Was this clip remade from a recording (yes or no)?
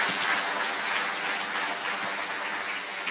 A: no